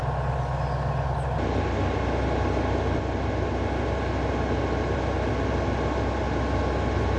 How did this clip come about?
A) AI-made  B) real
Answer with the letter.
B